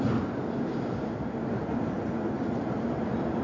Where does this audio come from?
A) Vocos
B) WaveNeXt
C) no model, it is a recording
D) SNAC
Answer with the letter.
C